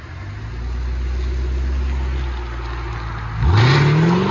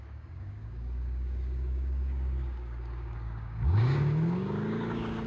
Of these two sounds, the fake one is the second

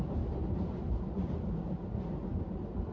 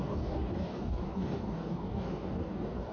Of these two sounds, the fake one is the second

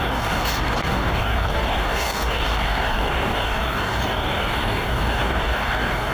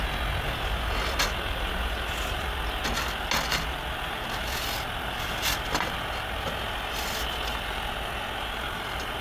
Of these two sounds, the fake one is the first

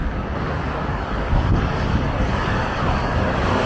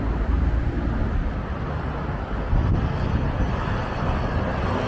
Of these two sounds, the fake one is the first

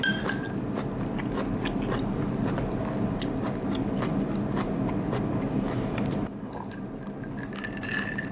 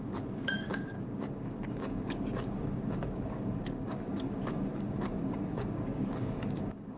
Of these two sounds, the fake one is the second